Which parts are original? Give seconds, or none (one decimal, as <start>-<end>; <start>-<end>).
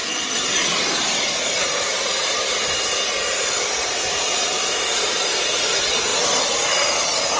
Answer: 4.4-6.1